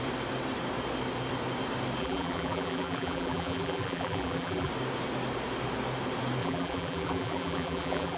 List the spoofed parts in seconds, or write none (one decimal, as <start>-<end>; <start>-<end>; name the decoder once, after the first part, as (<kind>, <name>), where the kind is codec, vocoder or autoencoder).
2.0-4.7 (vocoder, BigVGAN v2); 6.4-8.2